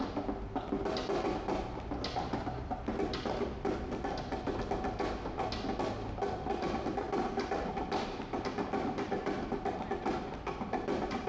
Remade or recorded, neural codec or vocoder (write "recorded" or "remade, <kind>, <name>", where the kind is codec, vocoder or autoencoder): recorded